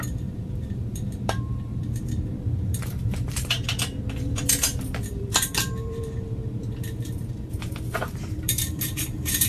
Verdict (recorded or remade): remade